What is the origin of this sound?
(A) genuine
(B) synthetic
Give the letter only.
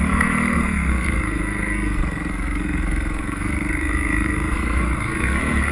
B